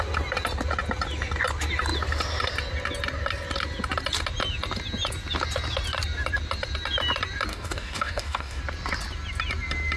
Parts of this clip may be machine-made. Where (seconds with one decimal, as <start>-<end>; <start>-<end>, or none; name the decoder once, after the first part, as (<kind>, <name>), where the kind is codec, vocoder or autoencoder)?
7.5-8.6 (codec, DAC)